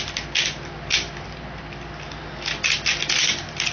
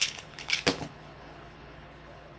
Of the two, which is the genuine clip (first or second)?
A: first